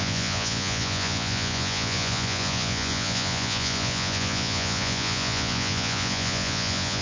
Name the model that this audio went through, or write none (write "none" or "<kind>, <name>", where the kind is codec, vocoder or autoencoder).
vocoder, Vocos